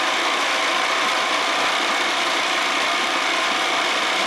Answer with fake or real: real